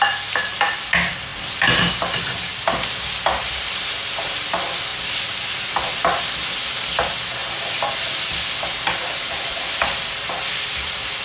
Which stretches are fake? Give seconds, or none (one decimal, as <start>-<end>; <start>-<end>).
none